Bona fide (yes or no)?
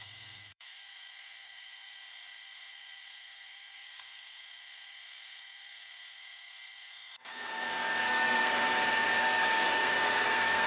no